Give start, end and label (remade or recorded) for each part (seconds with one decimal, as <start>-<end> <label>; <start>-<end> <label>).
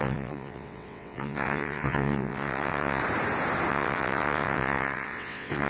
0.0-3.0 remade; 3.0-3.7 recorded; 3.7-5.7 remade